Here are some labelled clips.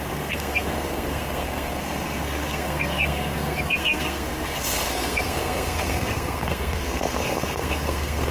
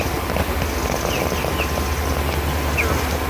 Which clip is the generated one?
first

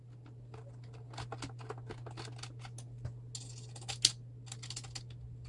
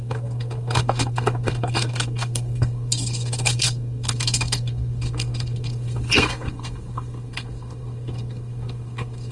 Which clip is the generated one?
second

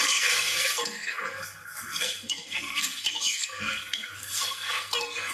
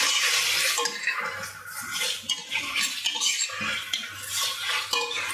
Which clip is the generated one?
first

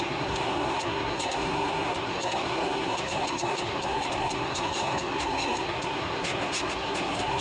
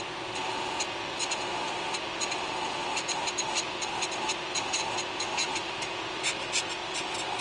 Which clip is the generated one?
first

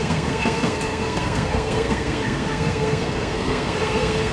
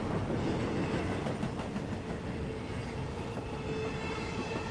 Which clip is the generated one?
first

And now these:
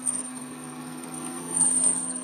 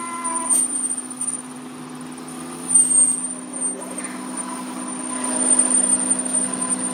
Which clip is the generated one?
first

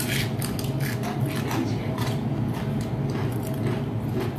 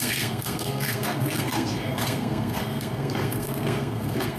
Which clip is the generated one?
second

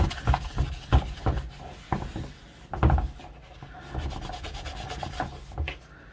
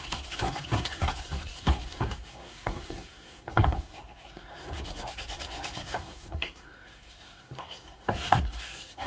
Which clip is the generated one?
second